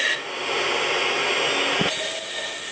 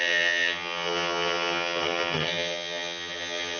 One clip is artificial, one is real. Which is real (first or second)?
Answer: first